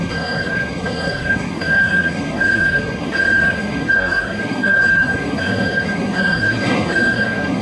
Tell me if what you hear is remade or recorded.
remade